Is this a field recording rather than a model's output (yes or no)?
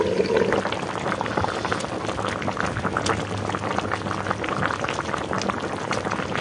yes